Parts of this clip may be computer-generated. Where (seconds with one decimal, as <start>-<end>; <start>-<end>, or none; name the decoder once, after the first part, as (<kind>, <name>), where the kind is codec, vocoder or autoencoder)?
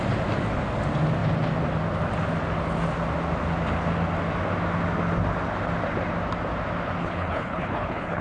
7.0-8.2 (codec, HILCodec)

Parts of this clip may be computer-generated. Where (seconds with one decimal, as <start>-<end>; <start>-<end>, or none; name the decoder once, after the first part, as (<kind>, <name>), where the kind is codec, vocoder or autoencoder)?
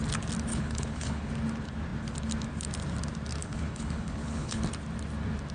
0.5-1.3 (codec, HILCodec); 3.4-4.6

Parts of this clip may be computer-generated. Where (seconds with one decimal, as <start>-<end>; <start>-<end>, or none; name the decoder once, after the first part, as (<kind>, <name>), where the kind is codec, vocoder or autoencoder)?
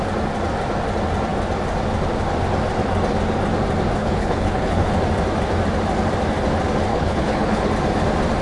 4.0-4.9 (codec, HILCodec); 6.9-7.7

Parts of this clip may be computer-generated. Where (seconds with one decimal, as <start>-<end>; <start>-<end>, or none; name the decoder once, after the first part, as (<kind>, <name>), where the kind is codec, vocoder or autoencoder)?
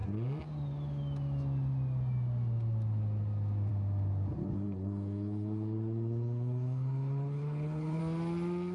4.4-8.0 (codec, HILCodec)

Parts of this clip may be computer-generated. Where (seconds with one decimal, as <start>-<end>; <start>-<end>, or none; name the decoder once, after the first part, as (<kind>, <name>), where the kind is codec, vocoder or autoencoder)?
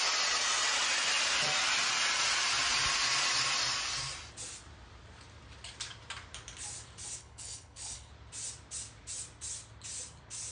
7.2-8.1 (codec, HILCodec)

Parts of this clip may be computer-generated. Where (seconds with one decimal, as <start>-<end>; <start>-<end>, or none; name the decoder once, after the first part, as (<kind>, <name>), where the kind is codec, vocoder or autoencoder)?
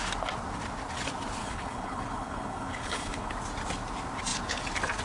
1.4-3.3 (codec, HILCodec)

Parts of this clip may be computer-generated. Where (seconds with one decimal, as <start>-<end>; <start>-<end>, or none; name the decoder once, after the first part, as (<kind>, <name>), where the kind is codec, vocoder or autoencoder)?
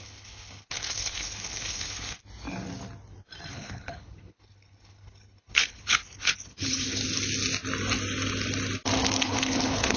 0.0-2.2 (codec, HILCodec); 3.5-7.0; 9.2-10.0